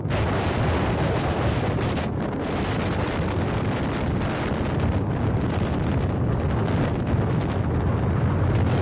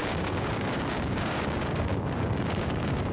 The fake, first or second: second